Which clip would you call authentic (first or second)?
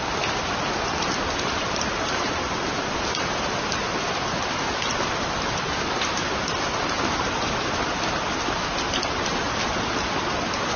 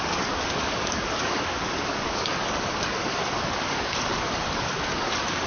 first